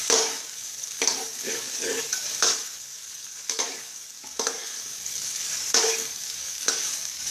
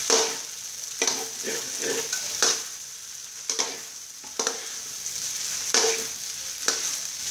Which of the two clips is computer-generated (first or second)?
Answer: first